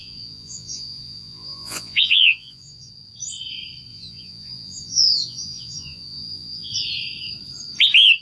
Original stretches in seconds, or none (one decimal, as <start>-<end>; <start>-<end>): 2.9-3.9; 6.7-8.2